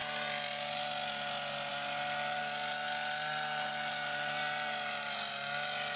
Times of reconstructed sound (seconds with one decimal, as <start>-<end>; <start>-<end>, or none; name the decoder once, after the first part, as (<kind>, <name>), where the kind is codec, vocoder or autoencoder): none